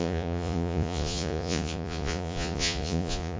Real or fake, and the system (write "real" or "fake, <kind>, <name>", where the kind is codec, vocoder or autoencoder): fake, vocoder, Vocos